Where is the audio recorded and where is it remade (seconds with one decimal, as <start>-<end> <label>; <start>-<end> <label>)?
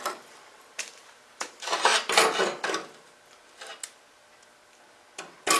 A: 0.0-1.9 remade; 1.9-5.6 recorded